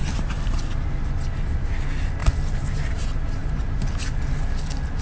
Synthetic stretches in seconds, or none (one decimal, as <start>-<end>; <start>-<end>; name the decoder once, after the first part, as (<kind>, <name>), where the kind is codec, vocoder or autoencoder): 0.0-0.6 (vocoder, BigVGAN v2); 2.2-3.0